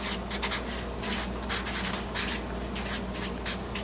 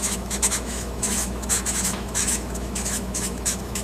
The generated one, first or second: second